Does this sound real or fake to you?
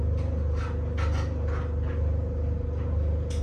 real